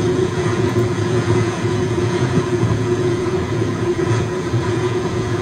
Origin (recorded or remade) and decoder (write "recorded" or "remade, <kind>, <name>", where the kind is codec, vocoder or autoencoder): remade, vocoder, Vocos